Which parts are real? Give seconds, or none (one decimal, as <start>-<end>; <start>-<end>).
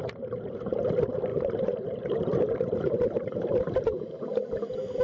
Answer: 0.0-1.3; 4.3-5.0